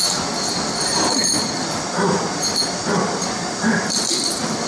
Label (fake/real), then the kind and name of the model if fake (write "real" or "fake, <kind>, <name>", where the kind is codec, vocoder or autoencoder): real